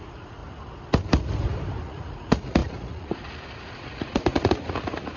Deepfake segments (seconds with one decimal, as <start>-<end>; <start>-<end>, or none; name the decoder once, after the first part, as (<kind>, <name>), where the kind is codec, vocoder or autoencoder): 0.0-0.4 (vocoder, Vocos); 1.8-5.2